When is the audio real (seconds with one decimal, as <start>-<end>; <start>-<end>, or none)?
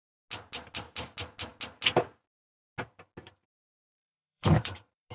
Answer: 0.0-3.4